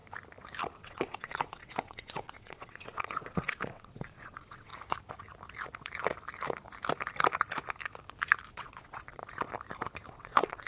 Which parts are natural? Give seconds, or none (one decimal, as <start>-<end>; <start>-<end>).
0.0-0.8; 4.7-8.5; 9.2-10.1

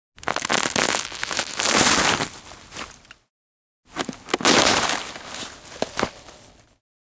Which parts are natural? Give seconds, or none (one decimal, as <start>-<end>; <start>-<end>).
0.0-7.1

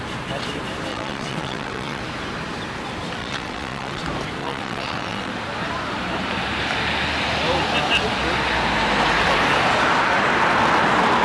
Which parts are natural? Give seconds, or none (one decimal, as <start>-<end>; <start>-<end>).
0.0-0.9; 2.0-3.2; 4.0-4.4; 5.3-11.2